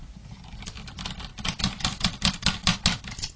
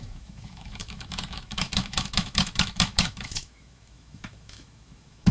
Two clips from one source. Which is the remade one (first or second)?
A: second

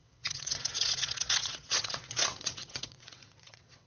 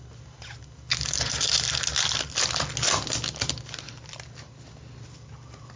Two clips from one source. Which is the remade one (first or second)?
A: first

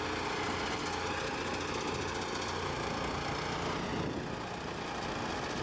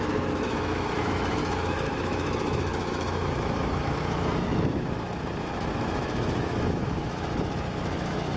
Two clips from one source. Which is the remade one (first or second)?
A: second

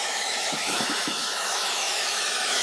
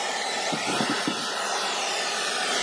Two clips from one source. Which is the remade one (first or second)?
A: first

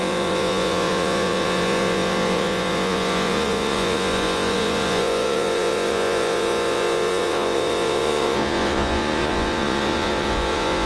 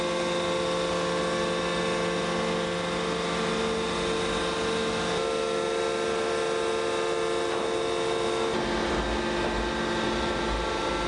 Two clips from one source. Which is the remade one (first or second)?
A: first